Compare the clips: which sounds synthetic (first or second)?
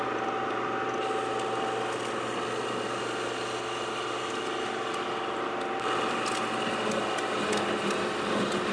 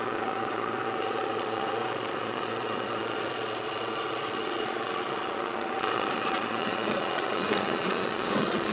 second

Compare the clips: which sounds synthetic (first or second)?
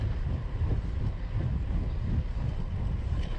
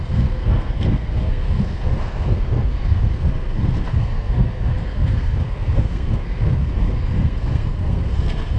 second